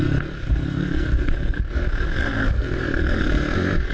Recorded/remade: remade